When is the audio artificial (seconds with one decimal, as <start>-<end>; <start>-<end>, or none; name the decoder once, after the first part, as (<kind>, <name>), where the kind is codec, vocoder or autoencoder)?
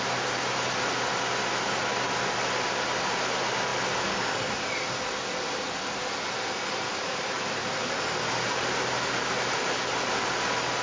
none